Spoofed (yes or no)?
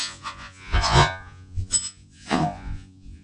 yes